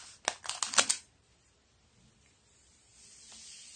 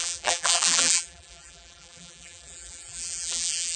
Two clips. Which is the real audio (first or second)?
first